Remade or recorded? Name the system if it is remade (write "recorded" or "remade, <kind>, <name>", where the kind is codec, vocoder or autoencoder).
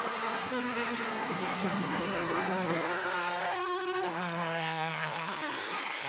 remade, codec, SNAC